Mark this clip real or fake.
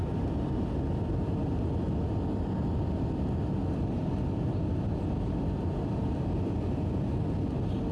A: real